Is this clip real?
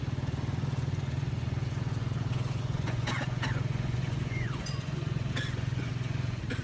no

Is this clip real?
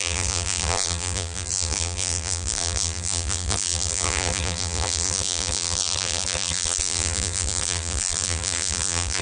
no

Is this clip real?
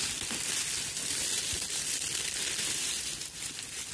yes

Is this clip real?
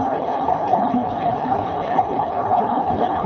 no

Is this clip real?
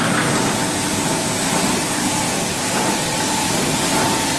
yes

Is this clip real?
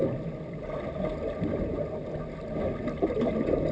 yes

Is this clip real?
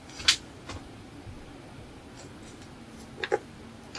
yes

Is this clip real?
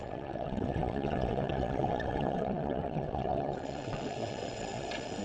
no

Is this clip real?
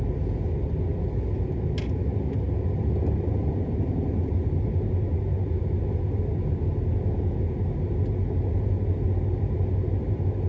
yes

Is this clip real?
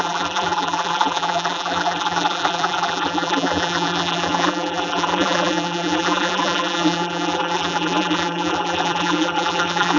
no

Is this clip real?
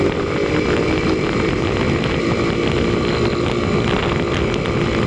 yes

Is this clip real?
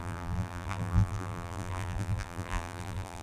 no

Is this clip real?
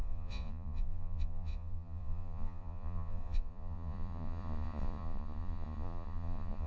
no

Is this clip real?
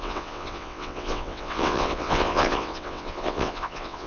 no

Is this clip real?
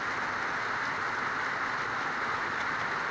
yes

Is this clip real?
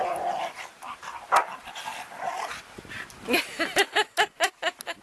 yes